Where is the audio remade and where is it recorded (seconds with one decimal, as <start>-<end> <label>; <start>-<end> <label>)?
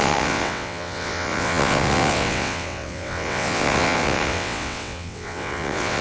0.0-6.0 remade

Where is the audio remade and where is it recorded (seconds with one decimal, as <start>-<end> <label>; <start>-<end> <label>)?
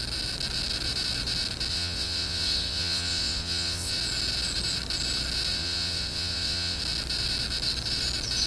0.0-1.7 recorded; 1.7-3.9 remade; 3.9-5.5 recorded; 5.5-6.8 remade; 6.8-8.5 recorded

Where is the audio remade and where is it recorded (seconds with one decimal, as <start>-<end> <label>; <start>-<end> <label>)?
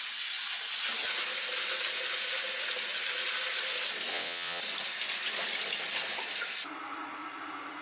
0.0-4.1 recorded; 4.1-4.6 remade; 4.6-7.8 recorded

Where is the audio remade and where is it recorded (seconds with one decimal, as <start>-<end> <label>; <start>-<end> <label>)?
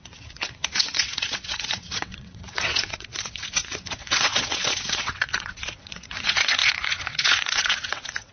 0.0-8.3 remade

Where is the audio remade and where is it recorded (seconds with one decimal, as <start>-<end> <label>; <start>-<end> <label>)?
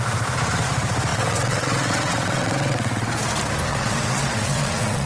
0.0-1.1 recorded; 1.1-3.1 remade; 3.1-3.7 recorded; 3.7-5.1 remade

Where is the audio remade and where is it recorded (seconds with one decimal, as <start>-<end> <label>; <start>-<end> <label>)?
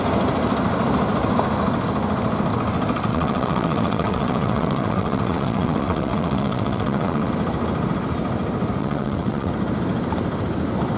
0.0-3.1 recorded; 3.1-7.3 remade; 7.3-8.8 recorded; 8.8-9.5 remade; 9.5-11.0 recorded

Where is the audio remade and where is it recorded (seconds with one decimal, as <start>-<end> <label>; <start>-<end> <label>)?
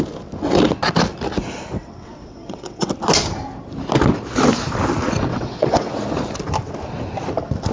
0.0-1.8 recorded; 1.8-2.9 remade; 2.9-5.3 recorded; 5.3-5.9 remade; 5.9-7.7 recorded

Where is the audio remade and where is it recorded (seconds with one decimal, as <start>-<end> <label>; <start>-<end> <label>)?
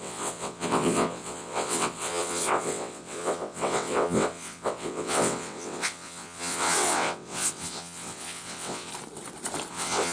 0.0-8.9 remade; 8.9-9.7 recorded; 9.7-10.1 remade